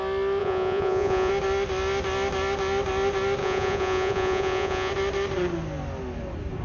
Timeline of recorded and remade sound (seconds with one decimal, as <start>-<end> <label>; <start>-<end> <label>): 0.0-0.4 recorded; 0.4-1.3 remade; 1.3-3.4 recorded; 3.4-4.9 remade; 4.9-6.6 recorded

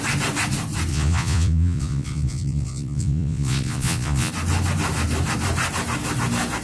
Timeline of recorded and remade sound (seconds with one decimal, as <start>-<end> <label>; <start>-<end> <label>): 0.0-0.9 recorded; 0.9-4.3 remade; 4.3-6.6 recorded

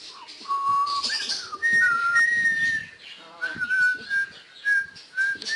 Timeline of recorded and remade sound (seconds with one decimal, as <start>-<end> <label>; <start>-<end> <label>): 0.0-5.6 recorded

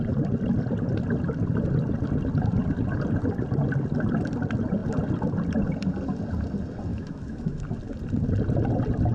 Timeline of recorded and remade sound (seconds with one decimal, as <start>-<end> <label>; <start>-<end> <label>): 0.0-6.9 recorded; 6.9-7.6 remade; 7.6-9.1 recorded

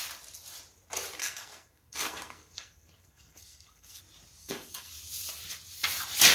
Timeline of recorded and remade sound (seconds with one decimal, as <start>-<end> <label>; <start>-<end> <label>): 0.0-1.2 recorded; 1.2-4.0 remade; 4.0-4.4 recorded; 4.4-4.9 remade; 4.9-6.3 recorded